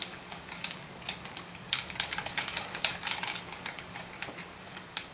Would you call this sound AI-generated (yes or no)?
yes